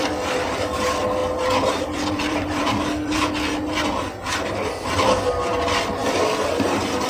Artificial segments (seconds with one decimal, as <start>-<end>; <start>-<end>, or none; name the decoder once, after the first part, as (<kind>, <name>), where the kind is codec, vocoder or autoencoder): 0.0-1.2 (vocoder, BigVGAN v2); 1.8-3.5; 5.4-7.1